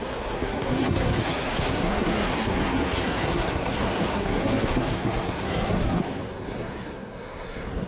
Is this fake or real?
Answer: fake